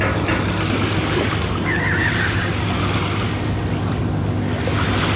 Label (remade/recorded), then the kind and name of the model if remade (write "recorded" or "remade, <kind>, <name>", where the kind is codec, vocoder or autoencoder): recorded